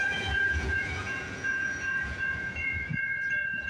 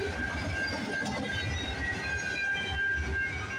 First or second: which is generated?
first